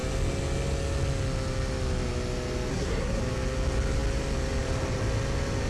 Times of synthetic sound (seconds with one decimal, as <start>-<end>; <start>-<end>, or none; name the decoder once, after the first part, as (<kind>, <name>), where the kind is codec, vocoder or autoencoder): 2.7-3.2 (codec, SNAC)